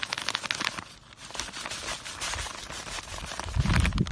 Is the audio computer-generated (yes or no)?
no